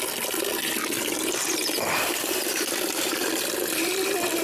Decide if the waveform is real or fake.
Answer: fake